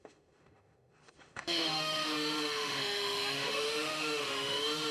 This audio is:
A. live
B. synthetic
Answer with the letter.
B